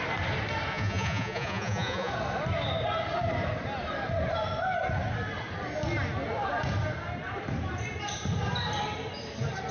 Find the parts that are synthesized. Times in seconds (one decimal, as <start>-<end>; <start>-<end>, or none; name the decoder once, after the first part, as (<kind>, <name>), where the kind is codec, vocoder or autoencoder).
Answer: 0.7-2.1 (vocoder, Vocos)